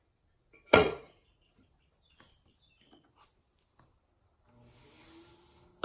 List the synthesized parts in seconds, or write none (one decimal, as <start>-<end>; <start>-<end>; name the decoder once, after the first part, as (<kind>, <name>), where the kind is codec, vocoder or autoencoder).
0.7-1.6 (vocoder, Vocos)

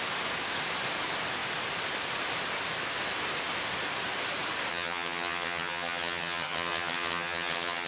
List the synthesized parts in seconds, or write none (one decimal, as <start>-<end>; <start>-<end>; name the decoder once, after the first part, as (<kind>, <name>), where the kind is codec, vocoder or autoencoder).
4.7-7.9 (vocoder, HiFi-GAN)

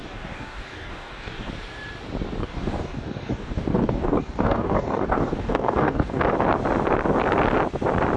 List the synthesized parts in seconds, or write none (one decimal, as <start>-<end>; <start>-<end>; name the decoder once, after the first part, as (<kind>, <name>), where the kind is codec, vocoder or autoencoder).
0.0-1.5 (codec, DAC); 2.4-6.2